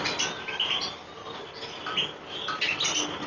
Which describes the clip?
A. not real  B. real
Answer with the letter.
B